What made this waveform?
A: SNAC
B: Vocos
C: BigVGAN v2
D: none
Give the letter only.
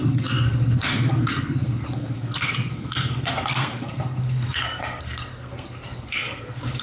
A